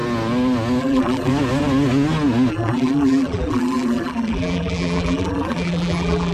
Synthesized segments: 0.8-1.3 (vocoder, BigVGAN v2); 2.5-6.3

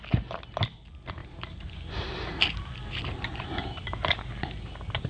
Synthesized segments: 1.2-3.8 (vocoder, BigVGAN v2)

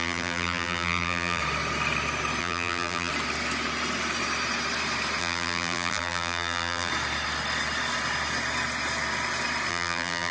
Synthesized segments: 0.0-1.4 (vocoder, BigVGAN v2); 2.4-3.1; 5.2-6.9; 9.7-10.3

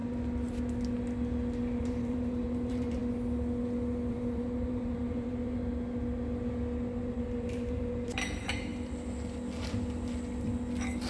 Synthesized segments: 1.8-3.0 (vocoder, BigVGAN v2); 4.1-5.6; 7.0-8.7

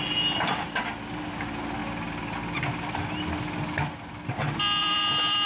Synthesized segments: 4.8-5.5 (vocoder, BigVGAN v2)

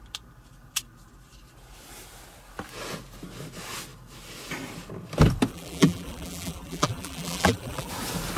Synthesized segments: 5.5-7.9 (vocoder, BigVGAN v2)

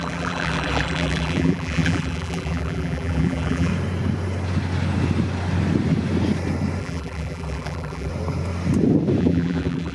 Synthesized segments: 0.0-3.7 (vocoder, BigVGAN v2); 6.8-8.1; 9.2-9.9